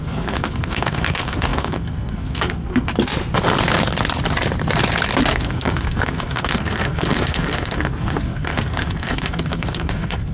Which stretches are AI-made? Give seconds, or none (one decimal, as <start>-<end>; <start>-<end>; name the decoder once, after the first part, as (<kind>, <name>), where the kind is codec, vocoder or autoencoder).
0.0-2.9 (codec, SNAC); 5.3-10.3